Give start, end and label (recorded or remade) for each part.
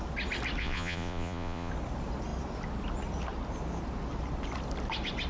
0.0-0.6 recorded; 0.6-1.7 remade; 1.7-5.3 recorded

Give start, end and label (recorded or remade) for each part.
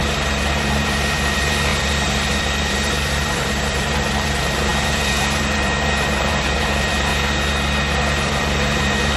0.0-7.1 remade; 7.1-8.0 recorded; 8.0-9.2 remade